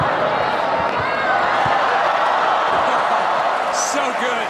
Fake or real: real